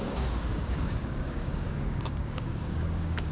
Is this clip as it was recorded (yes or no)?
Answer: no